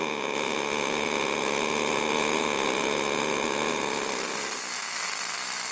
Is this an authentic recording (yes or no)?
yes